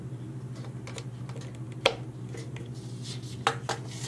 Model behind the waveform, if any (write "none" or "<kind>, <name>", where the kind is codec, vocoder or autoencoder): none